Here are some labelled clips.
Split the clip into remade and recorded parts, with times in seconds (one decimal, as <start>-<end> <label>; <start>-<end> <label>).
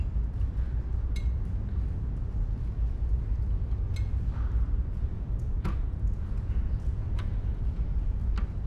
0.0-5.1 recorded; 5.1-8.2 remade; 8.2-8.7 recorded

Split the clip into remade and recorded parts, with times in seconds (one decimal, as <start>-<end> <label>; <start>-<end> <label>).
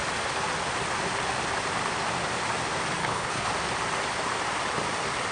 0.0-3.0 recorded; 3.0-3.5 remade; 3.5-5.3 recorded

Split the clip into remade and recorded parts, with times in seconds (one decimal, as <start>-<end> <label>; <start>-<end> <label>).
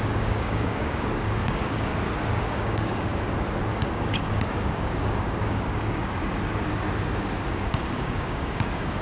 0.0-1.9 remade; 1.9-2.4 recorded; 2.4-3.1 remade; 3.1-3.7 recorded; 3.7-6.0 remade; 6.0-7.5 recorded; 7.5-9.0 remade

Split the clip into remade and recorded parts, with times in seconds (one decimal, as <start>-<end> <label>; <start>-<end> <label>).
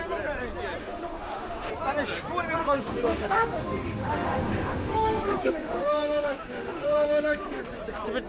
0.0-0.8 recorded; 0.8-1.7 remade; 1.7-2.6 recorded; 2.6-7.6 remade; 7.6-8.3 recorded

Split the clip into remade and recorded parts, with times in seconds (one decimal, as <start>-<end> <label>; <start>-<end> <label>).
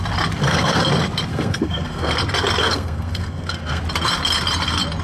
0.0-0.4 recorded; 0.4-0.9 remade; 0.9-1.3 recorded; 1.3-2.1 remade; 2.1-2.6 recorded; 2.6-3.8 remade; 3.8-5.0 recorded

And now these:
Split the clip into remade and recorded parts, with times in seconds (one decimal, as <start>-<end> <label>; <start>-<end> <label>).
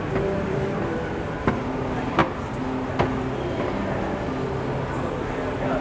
0.0-2.2 remade; 2.2-5.8 recorded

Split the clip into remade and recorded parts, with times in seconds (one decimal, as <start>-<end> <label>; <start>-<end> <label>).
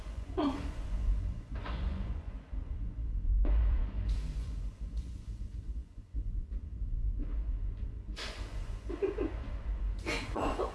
0.0-10.7 remade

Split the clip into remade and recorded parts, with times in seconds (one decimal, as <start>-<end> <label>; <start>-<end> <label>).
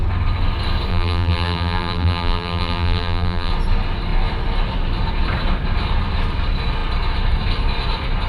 0.0-0.9 recorded; 0.9-3.5 remade; 3.5-8.3 recorded